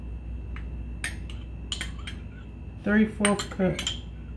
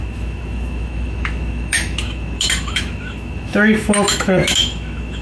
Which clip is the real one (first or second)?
first